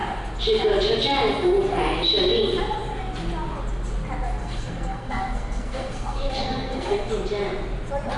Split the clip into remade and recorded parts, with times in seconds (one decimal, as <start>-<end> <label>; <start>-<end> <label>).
0.0-4.4 recorded; 4.4-7.1 remade; 7.1-8.2 recorded